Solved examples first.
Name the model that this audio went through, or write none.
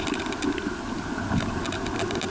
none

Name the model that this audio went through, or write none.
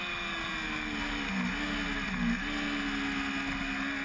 none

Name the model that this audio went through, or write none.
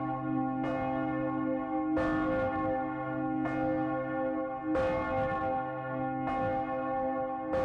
none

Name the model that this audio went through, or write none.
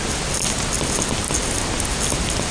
none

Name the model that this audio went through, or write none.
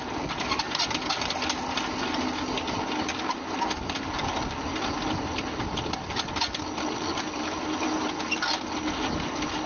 none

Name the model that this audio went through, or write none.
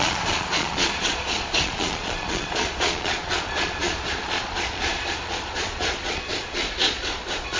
vocoder, Vocos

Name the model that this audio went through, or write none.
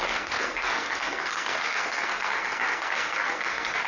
codec, SNAC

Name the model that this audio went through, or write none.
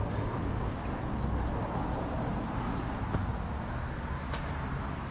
none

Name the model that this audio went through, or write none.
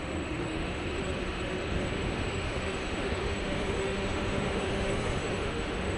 autoencoder, DAC-VAE